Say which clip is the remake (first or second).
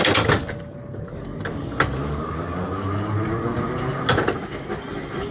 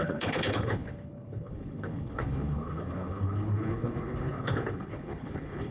second